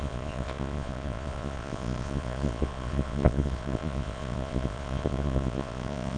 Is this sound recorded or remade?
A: remade